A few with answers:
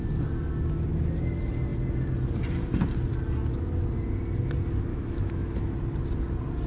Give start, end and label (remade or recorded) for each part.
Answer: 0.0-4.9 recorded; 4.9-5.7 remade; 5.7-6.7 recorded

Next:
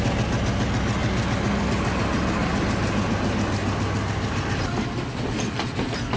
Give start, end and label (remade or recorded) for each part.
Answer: 0.0-6.2 recorded